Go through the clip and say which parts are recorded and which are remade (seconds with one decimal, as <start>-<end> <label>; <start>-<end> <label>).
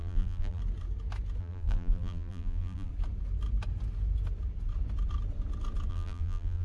0.0-0.6 remade; 0.6-1.4 recorded; 1.4-2.9 remade; 2.9-5.9 recorded; 5.9-6.6 remade